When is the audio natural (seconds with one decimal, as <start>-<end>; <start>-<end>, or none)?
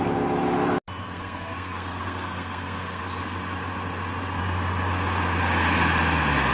0.0-1.0; 3.0-6.5